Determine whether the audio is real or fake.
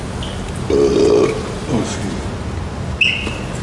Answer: real